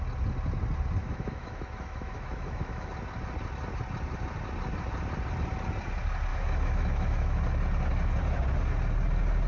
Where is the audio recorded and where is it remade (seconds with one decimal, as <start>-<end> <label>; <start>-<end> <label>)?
0.0-1.0 recorded; 1.0-2.9 remade; 2.9-6.3 recorded; 6.3-7.4 remade; 7.4-9.5 recorded